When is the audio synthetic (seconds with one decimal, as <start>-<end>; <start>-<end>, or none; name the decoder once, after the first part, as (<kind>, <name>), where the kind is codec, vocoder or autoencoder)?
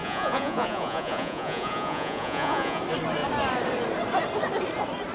0.0-2.8 (vocoder, Vocos)